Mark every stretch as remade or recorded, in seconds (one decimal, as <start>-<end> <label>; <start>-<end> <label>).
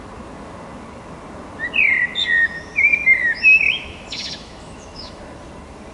0.0-3.2 recorded; 3.2-5.2 remade; 5.2-5.9 recorded